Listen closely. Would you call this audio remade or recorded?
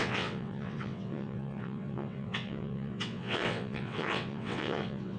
remade